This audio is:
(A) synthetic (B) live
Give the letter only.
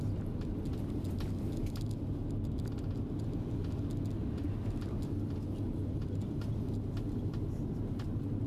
B